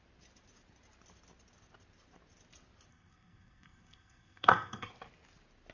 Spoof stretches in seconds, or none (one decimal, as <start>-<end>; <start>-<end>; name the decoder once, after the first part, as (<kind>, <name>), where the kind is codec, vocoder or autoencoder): 2.9-4.9 (codec, SNAC)